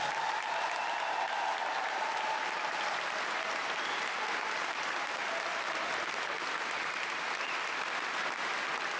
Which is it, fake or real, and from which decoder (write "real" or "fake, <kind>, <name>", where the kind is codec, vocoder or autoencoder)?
fake, vocoder, BigVGAN v2